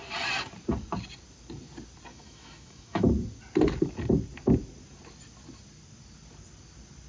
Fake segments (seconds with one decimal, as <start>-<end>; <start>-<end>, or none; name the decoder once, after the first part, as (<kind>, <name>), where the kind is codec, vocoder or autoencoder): 2.1-3.1 (autoencoder, DAC-VAE)